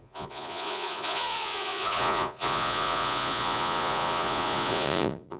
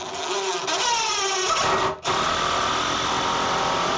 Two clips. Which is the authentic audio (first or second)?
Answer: second